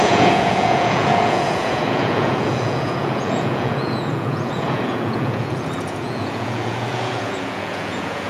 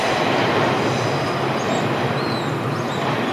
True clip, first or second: second